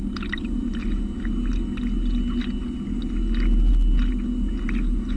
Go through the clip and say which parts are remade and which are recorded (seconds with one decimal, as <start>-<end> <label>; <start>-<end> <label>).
0.0-5.2 recorded